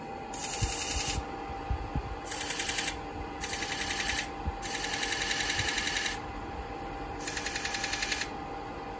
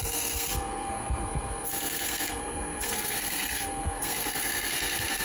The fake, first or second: second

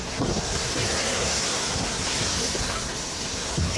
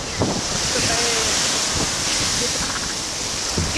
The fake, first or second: first